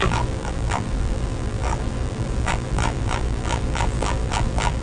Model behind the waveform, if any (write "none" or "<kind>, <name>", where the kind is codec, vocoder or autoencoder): vocoder, BigVGAN v2